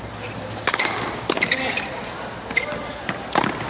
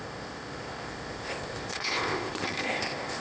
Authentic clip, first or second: first